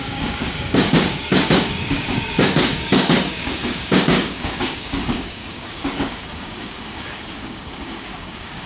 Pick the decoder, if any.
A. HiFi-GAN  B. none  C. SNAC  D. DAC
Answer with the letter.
D